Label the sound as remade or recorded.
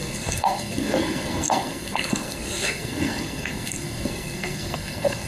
remade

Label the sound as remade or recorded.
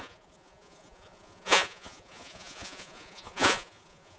remade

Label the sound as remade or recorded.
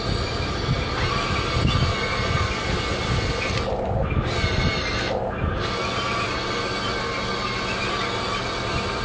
recorded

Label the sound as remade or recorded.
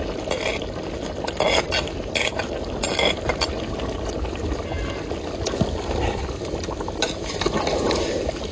recorded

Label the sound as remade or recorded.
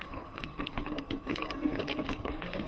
remade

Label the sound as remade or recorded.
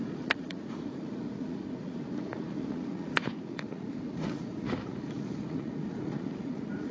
remade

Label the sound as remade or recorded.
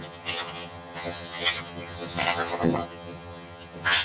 remade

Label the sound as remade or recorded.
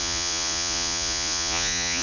remade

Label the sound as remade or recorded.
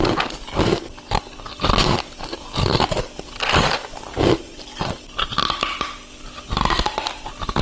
recorded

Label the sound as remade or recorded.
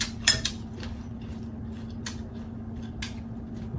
recorded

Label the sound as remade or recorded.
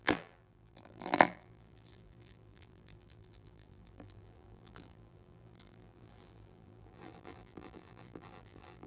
remade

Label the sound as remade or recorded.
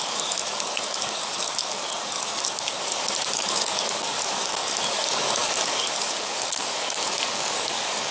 remade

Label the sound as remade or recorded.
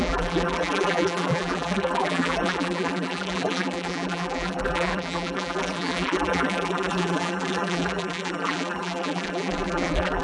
remade